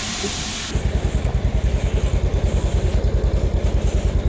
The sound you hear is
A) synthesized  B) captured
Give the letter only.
B